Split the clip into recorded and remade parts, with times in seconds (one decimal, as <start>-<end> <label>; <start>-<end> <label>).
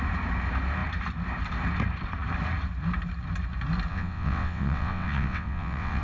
0.0-3.9 recorded; 3.9-6.0 remade